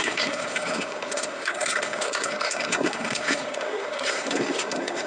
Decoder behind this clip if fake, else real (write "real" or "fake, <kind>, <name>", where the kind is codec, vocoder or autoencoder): fake, codec, SNAC